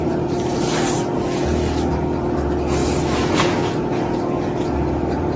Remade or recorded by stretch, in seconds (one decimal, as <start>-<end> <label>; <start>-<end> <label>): 0.0-5.4 recorded